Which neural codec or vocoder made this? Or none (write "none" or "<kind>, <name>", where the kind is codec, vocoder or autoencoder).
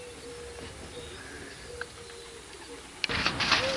none